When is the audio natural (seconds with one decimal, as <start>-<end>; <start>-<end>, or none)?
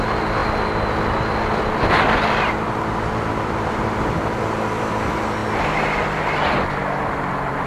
0.0-7.7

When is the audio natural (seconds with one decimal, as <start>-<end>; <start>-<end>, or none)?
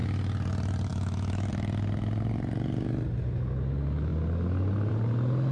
0.0-0.9; 1.5-5.5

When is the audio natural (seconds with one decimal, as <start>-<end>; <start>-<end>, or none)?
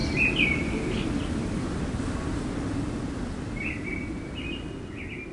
0.0-5.3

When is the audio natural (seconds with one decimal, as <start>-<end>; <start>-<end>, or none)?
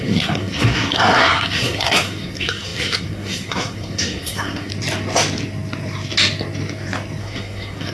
4.7-7.2